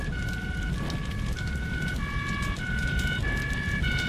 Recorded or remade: recorded